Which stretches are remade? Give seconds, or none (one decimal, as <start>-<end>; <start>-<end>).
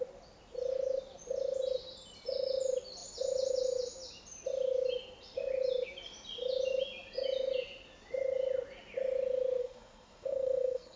9.6-11.0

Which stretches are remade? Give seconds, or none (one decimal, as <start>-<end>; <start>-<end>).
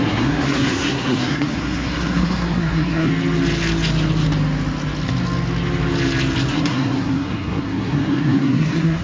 0.0-3.1; 6.5-9.0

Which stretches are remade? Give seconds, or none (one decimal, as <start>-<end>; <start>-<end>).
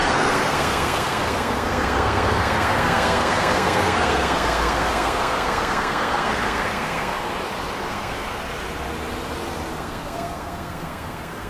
0.0-7.3; 7.9-8.3; 9.8-11.5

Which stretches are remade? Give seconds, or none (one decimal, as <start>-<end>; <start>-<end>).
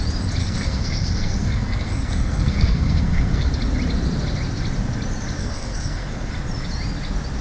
0.4-3.5; 5.4-6.3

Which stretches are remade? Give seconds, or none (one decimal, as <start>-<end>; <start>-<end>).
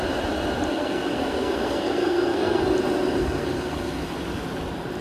0.7-2.6; 3.2-4.1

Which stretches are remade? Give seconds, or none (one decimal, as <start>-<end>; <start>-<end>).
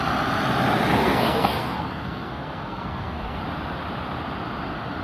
1.0-3.4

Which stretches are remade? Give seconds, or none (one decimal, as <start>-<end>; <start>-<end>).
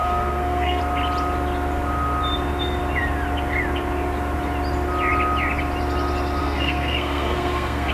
0.0-0.8; 6.4-7.9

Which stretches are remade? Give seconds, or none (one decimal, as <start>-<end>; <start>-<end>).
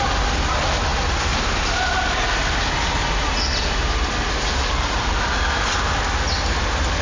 none